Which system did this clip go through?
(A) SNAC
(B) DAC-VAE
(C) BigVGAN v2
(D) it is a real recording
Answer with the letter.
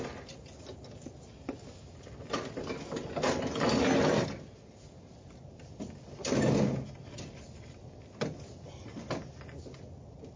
D